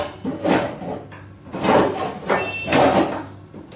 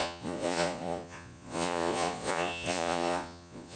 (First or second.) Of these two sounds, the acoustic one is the first